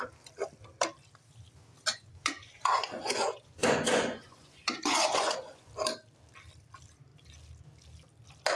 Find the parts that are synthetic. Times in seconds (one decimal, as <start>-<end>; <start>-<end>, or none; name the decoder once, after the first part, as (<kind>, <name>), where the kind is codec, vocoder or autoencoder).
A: 1.9-5.7 (vocoder, Vocos)